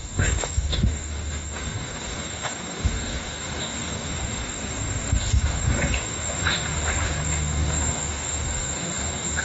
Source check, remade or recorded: remade